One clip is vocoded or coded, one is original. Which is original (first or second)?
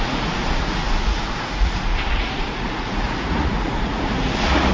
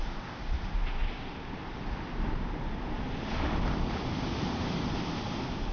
second